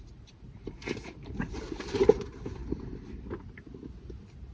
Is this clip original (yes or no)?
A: no